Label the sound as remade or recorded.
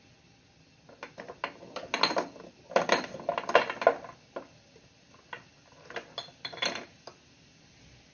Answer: recorded